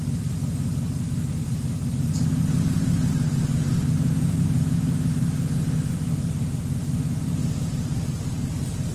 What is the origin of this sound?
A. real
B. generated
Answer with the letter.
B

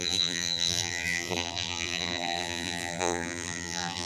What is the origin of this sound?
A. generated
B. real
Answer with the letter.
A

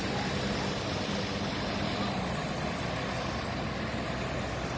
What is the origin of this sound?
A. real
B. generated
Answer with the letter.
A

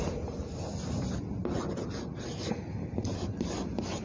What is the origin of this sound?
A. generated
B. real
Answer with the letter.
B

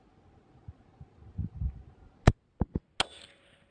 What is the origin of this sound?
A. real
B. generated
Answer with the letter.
A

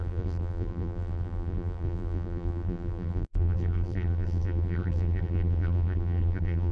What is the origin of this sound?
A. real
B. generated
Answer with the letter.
B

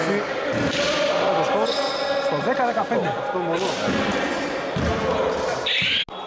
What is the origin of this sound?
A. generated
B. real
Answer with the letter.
B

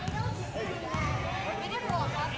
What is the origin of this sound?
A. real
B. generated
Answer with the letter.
A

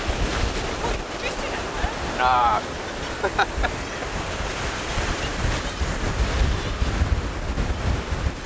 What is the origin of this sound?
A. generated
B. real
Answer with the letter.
B